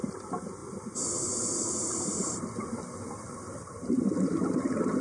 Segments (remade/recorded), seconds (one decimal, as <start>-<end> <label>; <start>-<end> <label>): 0.0-5.0 recorded